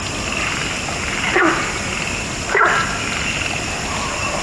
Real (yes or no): yes